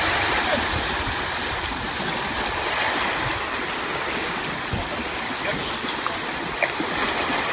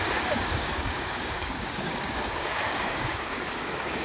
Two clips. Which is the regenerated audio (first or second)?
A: second